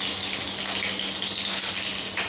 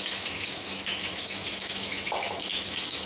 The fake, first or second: second